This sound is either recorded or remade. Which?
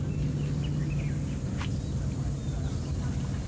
recorded